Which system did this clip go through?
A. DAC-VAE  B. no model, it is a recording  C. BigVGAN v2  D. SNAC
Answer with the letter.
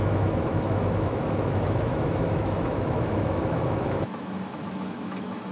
A